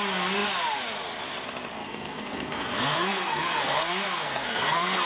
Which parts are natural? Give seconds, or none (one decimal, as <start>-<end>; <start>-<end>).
0.0-1.8